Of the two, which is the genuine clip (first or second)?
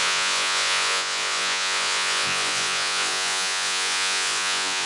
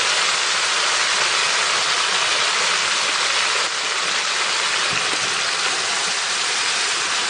second